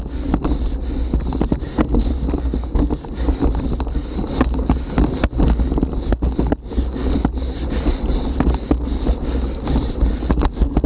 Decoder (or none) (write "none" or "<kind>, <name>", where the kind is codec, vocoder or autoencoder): none